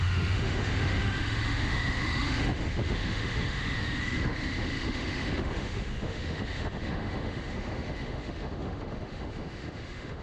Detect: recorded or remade remade